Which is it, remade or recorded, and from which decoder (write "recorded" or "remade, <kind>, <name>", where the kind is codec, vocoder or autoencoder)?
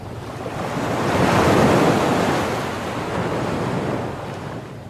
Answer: recorded